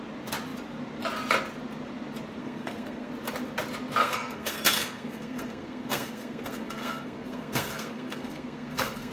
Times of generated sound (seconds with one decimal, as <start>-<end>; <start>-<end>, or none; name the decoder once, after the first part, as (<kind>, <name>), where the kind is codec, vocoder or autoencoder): 2.4-3.1 (codec, SNAC); 4.0-9.1